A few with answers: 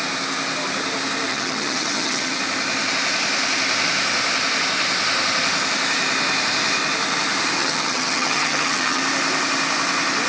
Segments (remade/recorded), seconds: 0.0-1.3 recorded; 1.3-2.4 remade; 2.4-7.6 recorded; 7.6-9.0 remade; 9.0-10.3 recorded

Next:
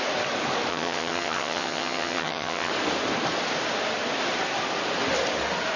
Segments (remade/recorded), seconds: 0.0-0.7 recorded; 0.7-2.7 remade; 2.7-5.8 recorded

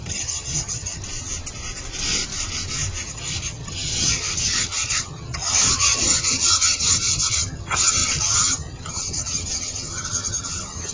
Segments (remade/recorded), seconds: 0.0-1.0 remade; 1.0-3.0 recorded; 3.0-10.9 remade

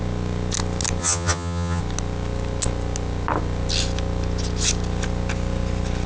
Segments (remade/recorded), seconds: 0.0-1.0 recorded; 1.0-1.8 remade; 1.8-6.1 recorded